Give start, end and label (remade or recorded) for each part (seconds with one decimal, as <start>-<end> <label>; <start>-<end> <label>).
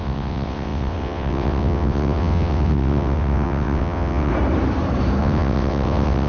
0.0-4.3 remade; 4.3-5.2 recorded; 5.2-6.3 remade